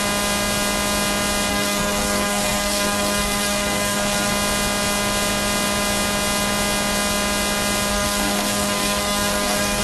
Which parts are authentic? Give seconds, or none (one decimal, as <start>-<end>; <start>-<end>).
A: 0.0-1.5; 4.3-7.9

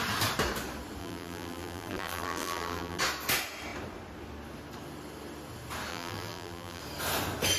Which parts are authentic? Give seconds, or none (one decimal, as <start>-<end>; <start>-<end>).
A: 0.0-1.0; 3.0-5.9; 6.8-7.6

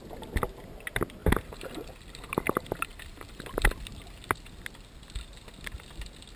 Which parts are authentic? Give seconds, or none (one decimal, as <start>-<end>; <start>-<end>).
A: 0.0-2.9; 4.2-6.4

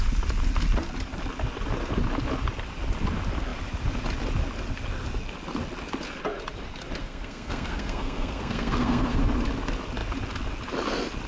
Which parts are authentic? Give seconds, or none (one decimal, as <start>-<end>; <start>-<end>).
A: 0.0-7.0; 9.2-11.3

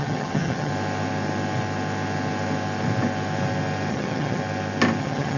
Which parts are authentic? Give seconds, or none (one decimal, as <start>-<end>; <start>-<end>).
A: 0.7-3.9; 4.4-5.0

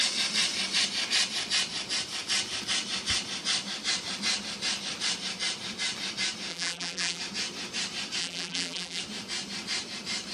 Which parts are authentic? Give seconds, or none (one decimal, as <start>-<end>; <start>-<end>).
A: 0.0-6.5; 7.2-8.2; 9.0-10.3